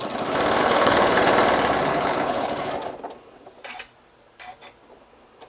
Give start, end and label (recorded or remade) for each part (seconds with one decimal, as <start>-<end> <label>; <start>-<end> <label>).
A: 0.0-0.6 recorded; 0.6-1.3 remade; 1.3-1.9 recorded; 1.9-2.7 remade; 2.7-5.5 recorded